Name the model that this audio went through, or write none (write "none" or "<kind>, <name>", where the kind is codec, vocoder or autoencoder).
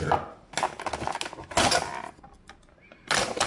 none